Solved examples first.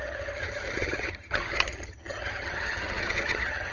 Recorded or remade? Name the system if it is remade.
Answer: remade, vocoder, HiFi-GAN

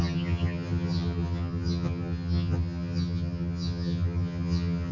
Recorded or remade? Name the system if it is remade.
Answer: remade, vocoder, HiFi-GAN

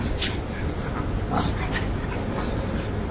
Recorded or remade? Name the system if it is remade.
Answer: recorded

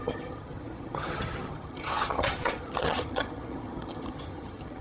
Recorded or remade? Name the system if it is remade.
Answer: remade, vocoder, HiFi-GAN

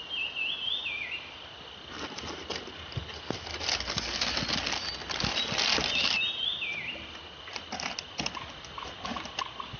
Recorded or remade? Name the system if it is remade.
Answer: recorded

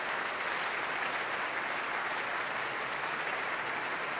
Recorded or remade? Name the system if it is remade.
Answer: recorded